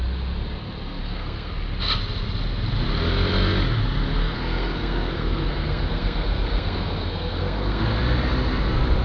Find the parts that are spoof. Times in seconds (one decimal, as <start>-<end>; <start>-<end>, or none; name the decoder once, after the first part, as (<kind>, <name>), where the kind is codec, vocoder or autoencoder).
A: 1.0-1.5 (codec, SNAC); 4.2-7.8